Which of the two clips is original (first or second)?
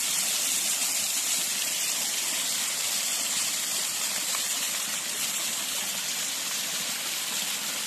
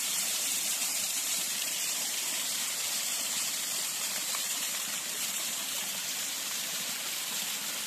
first